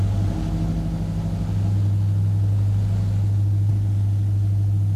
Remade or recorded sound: recorded